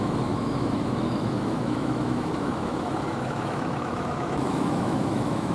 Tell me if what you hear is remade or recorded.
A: remade